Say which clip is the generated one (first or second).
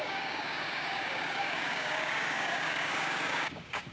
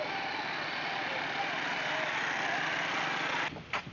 first